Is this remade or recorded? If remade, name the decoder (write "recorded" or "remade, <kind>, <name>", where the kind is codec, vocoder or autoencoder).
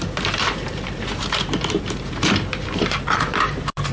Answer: remade, vocoder, BigVGAN v2